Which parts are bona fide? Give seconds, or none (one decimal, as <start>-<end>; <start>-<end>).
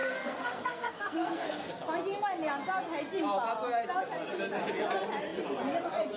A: 1.7-6.2